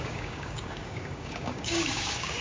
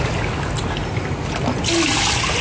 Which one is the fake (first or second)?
first